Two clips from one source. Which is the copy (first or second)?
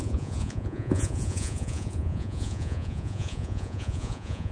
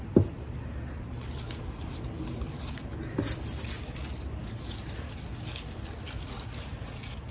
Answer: first